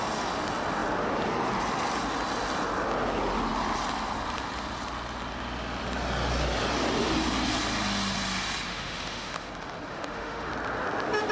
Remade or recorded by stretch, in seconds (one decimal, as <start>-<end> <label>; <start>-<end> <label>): 0.0-8.7 recorded; 8.7-9.5 remade; 9.5-9.9 recorded; 9.9-10.5 remade; 10.5-11.3 recorded